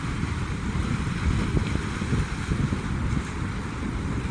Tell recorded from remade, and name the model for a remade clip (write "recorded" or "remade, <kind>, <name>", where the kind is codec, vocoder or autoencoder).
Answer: remade, vocoder, BigVGAN v2